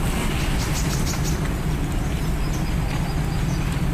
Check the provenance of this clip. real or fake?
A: real